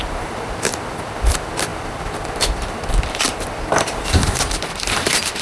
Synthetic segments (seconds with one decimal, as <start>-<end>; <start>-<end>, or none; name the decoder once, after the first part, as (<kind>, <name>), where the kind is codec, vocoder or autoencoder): 0.0-5.4 (vocoder, BigVGAN v2)